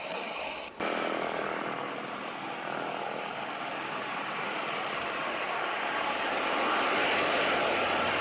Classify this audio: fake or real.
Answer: real